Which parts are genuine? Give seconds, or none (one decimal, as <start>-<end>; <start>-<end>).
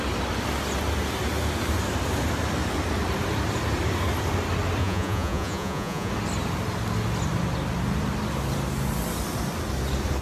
0.0-4.8; 6.1-10.2